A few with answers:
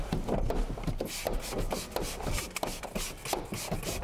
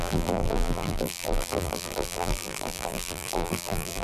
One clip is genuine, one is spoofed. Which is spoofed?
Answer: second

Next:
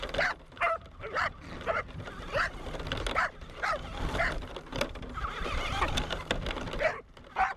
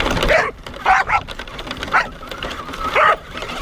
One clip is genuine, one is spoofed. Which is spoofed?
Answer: second